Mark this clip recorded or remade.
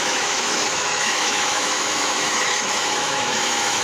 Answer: remade